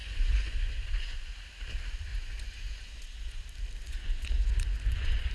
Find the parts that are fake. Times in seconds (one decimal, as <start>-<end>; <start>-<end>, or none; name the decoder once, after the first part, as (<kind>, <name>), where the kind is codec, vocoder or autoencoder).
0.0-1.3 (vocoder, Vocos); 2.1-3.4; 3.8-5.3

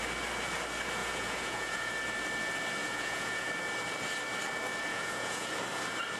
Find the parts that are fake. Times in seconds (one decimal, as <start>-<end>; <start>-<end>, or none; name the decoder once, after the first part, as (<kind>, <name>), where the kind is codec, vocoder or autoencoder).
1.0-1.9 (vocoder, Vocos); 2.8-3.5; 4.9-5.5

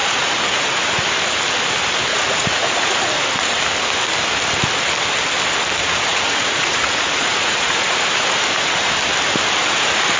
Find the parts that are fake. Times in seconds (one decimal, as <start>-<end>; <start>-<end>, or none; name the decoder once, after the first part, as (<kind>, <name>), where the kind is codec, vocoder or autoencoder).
0.0-1.0 (vocoder, Vocos); 2.1-3.1; 5.8-8.9